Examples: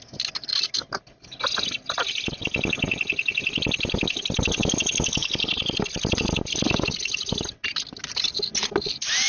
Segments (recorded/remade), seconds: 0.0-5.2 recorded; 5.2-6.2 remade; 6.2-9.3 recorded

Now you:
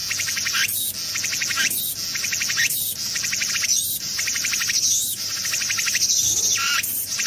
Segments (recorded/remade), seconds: 0.0-3.5 recorded; 3.5-7.3 remade

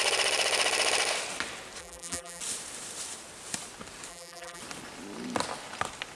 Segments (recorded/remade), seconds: 0.0-1.8 recorded; 1.8-2.4 remade; 2.4-4.1 recorded; 4.1-4.6 remade; 4.6-6.2 recorded

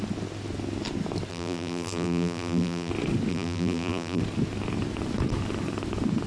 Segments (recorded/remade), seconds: 0.0-1.3 recorded; 1.3-2.9 remade; 2.9-3.3 recorded; 3.3-4.2 remade; 4.2-6.3 recorded

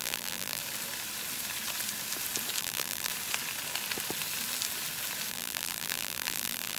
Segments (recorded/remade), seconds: 0.0-0.6 remade; 0.6-2.6 recorded; 2.6-3.1 remade; 3.1-5.3 recorded; 5.3-6.8 remade

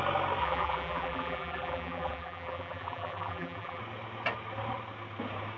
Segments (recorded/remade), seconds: 0.0-0.4 recorded; 0.4-3.8 remade; 3.8-5.6 recorded